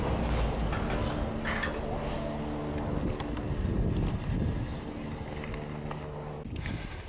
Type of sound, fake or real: real